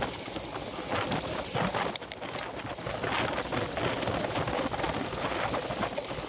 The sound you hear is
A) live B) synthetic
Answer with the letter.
A